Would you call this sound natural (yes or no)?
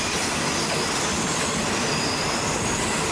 yes